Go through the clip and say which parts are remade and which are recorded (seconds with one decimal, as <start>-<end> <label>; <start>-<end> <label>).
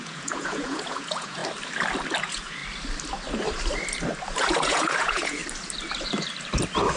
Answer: 0.0-1.4 remade; 1.4-2.2 recorded; 2.2-2.6 remade; 2.6-4.4 recorded; 4.4-5.4 remade; 5.4-7.0 recorded